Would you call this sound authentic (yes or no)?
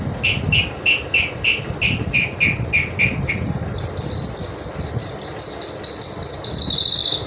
yes